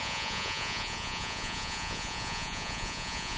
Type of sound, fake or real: fake